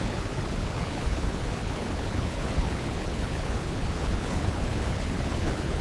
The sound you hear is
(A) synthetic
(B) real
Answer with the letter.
A